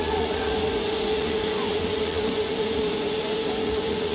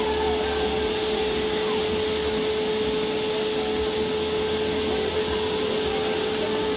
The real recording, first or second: second